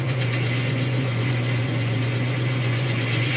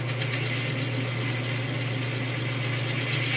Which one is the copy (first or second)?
first